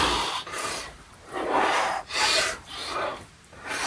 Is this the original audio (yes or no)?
no